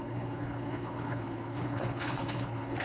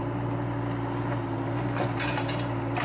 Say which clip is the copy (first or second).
first